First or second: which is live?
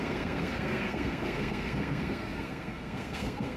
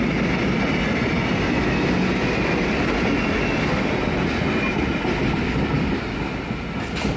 second